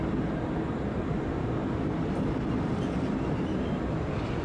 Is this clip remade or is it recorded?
remade